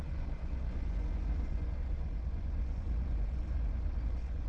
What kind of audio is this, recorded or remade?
remade